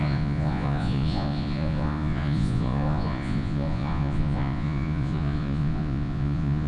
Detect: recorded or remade remade